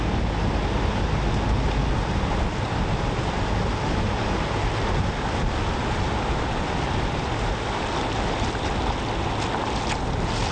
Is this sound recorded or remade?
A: recorded